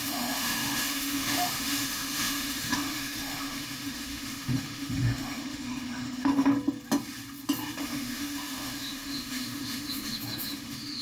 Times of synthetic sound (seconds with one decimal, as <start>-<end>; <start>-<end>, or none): 0.0-6.5; 7.8-11.0